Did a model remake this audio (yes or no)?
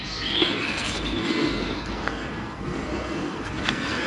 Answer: yes